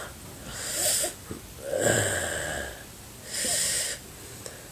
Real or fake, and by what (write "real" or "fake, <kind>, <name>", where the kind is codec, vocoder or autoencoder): real